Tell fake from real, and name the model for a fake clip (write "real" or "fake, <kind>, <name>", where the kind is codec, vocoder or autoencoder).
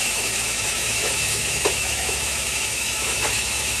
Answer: fake, autoencoder, DAC-VAE